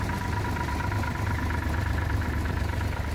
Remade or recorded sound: recorded